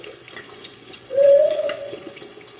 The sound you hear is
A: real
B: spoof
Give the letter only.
B